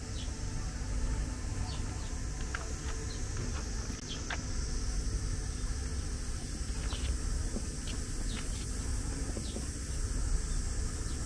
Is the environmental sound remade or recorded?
recorded